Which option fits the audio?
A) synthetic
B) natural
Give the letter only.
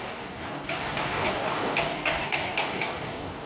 A